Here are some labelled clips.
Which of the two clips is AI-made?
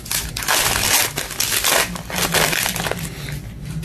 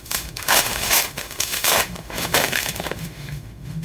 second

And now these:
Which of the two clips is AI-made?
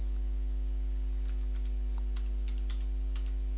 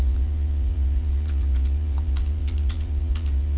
second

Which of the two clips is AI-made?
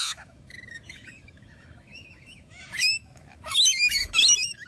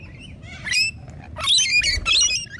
first